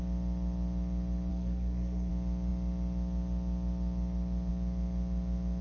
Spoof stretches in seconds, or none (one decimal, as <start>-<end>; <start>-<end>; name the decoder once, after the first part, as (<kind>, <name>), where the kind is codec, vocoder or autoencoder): 1.3-2.1 (codec, SNAC)